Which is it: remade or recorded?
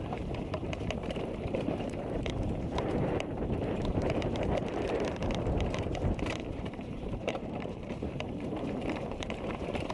remade